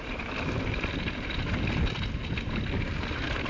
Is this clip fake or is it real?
real